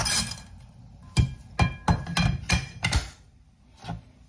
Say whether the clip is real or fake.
real